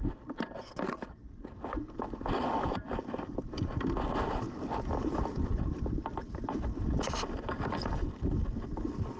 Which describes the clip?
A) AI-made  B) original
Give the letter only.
A